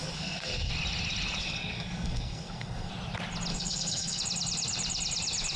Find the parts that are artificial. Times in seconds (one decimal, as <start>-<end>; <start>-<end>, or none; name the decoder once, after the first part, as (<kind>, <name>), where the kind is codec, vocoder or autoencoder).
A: 0.0-0.7 (codec, SNAC); 1.4-2.9; 3.5-4.2